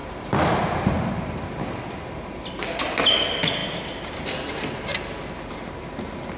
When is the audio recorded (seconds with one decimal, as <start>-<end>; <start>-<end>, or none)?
0.8-6.4